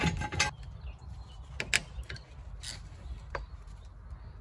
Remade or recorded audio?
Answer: recorded